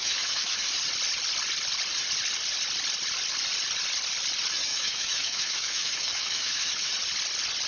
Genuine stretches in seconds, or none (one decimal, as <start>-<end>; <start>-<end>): 0.7-4.7; 6.9-7.7